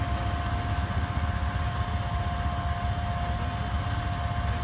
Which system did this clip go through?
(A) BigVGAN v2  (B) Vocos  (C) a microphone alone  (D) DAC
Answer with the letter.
C